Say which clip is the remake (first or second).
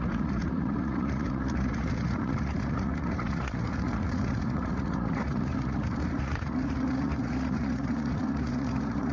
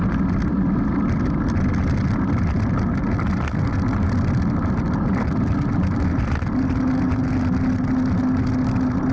first